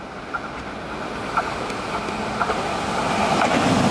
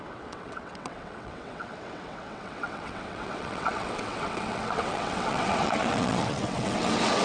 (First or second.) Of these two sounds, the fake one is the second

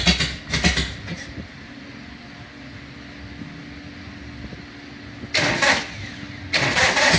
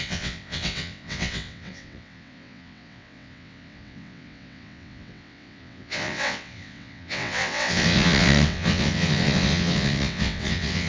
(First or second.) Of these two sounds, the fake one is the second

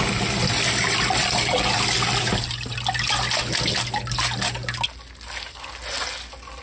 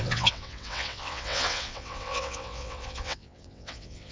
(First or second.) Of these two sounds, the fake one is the second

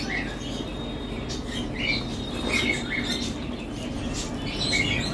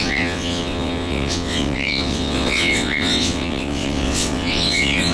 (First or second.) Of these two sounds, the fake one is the second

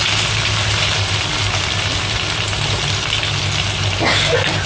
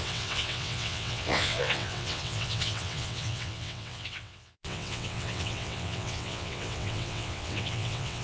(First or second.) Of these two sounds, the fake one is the second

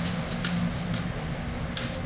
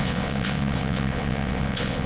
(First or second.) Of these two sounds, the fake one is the second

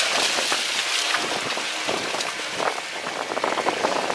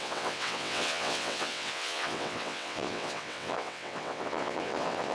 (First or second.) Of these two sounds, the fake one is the second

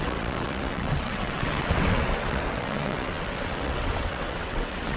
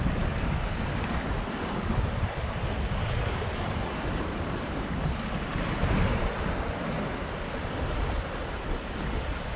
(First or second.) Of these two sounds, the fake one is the first